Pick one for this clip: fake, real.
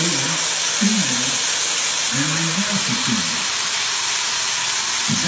real